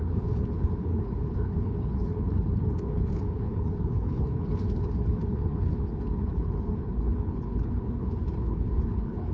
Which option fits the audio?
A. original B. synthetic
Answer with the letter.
B